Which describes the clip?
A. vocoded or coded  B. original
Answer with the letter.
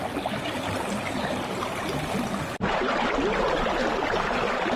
B